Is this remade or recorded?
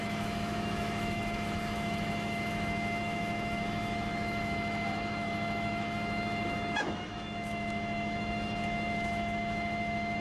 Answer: remade